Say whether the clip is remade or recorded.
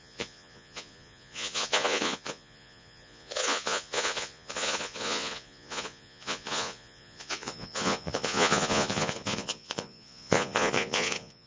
remade